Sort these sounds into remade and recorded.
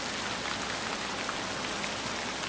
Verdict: recorded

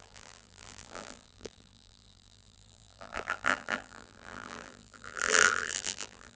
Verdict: remade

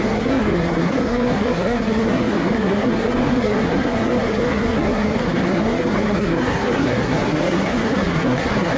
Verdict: remade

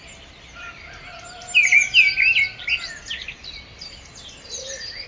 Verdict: recorded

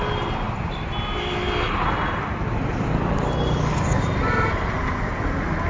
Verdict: recorded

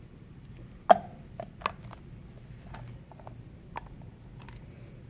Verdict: recorded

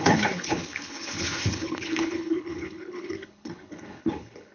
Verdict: remade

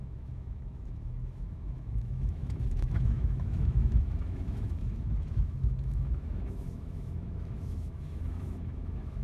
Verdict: remade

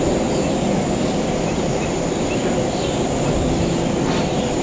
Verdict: recorded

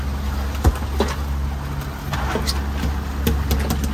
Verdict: recorded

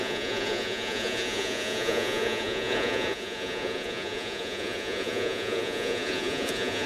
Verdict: remade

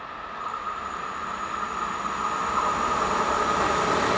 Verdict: recorded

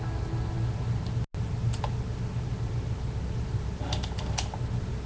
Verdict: recorded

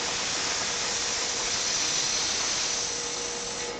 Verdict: recorded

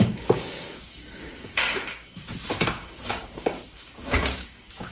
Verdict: remade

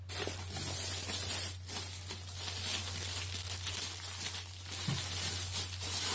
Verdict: recorded